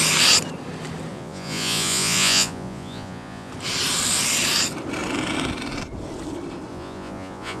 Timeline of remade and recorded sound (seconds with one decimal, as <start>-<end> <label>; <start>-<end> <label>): 0.0-1.1 recorded; 1.1-3.5 remade; 3.5-6.7 recorded; 6.7-7.6 remade